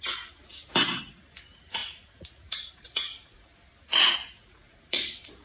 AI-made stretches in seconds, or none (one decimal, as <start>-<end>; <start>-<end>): 0.0-0.5; 1.4-3.5; 4.4-5.4